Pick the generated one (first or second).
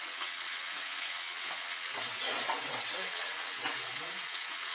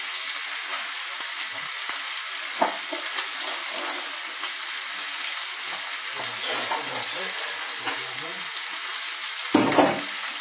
first